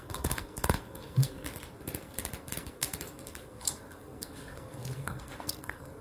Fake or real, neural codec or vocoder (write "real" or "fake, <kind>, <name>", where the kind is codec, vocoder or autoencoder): fake, codec, SNAC